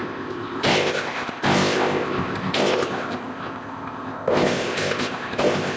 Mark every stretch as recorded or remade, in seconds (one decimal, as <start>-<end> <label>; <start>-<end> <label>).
0.0-5.8 remade